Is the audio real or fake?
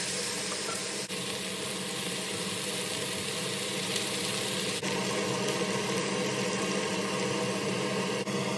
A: real